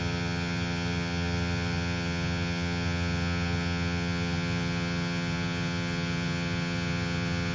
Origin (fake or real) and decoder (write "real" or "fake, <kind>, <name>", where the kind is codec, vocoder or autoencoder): fake, vocoder, HiFi-GAN